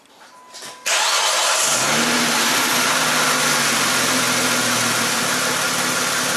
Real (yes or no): yes